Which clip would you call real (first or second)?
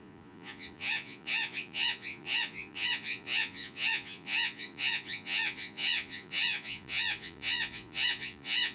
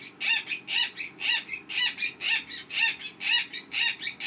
second